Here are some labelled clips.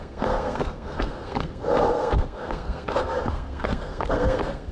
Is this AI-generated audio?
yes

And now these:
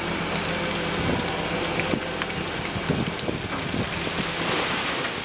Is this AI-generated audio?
no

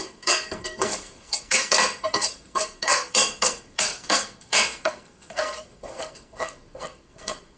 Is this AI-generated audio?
yes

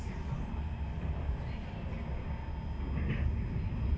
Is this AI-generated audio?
no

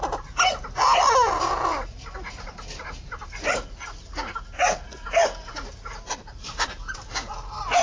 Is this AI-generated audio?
no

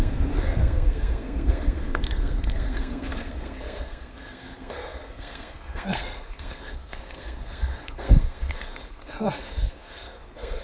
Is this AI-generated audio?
yes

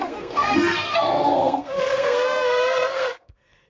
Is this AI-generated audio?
yes